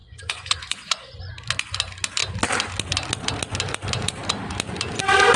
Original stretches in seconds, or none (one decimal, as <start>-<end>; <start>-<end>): 1.3-5.4